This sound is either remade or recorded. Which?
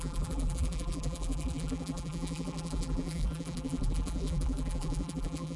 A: remade